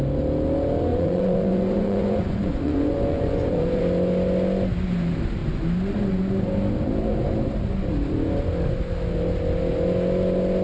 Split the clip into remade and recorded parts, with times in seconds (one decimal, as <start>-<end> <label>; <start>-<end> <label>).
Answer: 0.0-0.9 recorded; 0.9-3.8 remade; 3.8-10.6 recorded